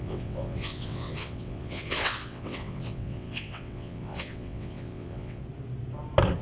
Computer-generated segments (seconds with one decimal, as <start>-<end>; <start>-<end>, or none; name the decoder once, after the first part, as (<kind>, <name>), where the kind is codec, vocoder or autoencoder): 0.0-5.4 (vocoder, WaveNeXt)